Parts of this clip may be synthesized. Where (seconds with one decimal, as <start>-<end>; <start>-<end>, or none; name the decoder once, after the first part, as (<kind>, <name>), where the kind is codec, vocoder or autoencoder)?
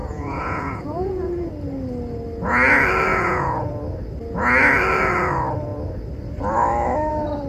0.0-1.5 (vocoder, Vocos); 3.1-3.7